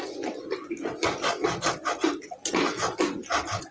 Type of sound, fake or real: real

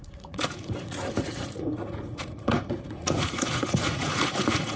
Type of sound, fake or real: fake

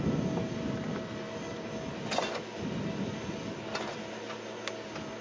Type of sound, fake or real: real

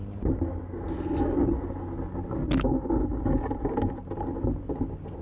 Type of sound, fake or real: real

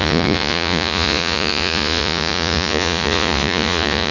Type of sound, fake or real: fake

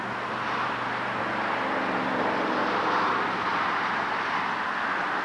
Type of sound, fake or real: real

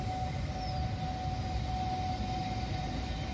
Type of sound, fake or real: real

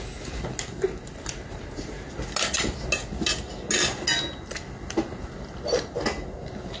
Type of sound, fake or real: real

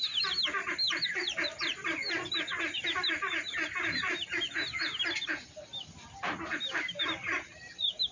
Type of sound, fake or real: real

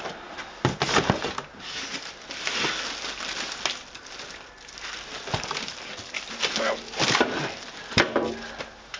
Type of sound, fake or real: real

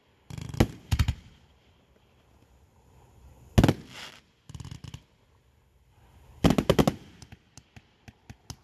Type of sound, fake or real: real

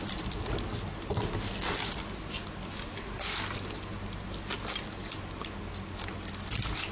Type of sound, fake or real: real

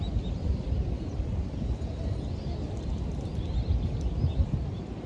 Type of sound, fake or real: real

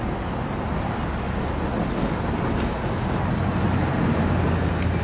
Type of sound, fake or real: real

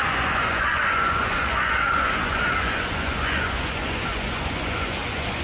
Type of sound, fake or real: fake